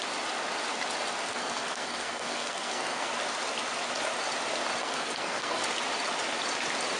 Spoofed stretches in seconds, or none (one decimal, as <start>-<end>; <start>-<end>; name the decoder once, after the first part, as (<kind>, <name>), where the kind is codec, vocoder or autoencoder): 1.3-3.1 (codec, SNAC); 4.8-5.6